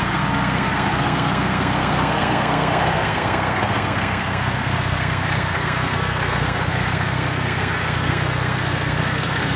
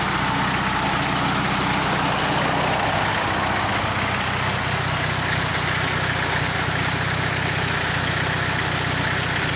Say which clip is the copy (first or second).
first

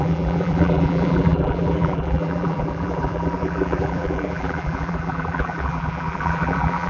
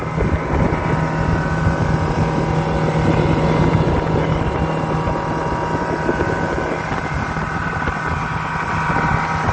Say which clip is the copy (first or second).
first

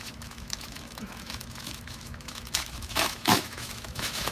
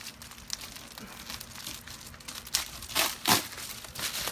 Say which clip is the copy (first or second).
first